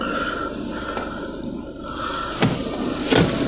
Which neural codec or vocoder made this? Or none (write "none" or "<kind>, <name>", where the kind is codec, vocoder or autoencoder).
none